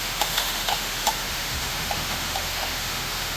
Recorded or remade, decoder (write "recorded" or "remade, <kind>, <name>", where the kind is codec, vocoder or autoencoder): remade, autoencoder, DAC-VAE